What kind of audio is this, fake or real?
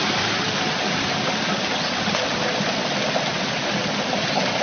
real